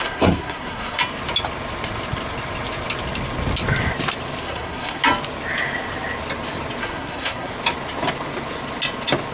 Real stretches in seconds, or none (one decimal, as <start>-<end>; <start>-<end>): 1.0-4.4; 5.0-6.8; 7.5-9.3